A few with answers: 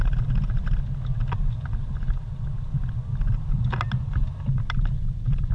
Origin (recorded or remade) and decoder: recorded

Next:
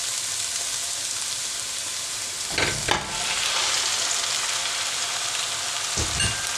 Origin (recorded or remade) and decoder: recorded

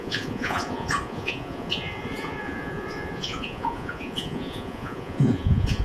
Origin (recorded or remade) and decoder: remade, vocoder, Vocos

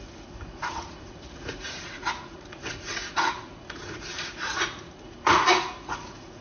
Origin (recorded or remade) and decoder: remade, vocoder, Vocos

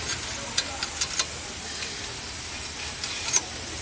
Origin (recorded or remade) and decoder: recorded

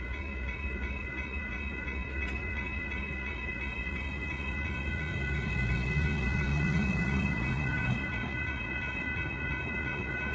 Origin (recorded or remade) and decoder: remade, vocoder, Vocos